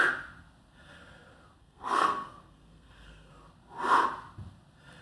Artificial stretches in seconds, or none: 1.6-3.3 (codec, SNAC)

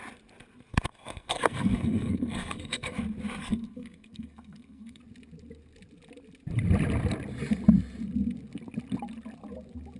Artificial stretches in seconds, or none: 0.7-3.0 (codec, SNAC); 3.4-5.0

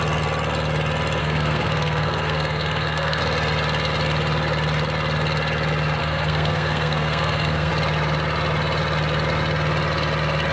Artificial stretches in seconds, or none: 1.2-3.2 (codec, SNAC); 6.0-7.7

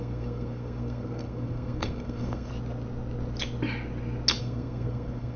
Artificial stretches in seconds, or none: 0.0-2.5 (codec, SNAC); 4.4-5.4

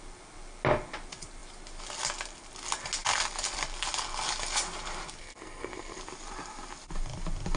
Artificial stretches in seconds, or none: 5.2-6.0 (codec, SNAC)

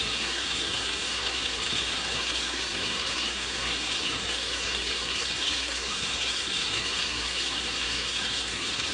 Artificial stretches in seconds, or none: 0.0-8.9 (codec, SNAC)